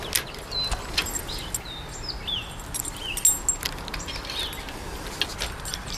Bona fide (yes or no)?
yes